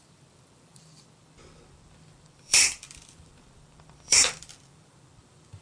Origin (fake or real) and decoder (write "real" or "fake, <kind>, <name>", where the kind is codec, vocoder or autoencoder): fake, vocoder, BigVGAN v2